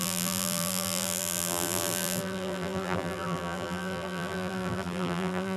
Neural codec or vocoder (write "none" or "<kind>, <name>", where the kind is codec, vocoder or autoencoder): vocoder, BigVGAN v2